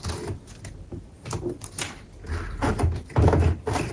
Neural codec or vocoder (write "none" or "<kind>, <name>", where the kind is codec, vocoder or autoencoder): none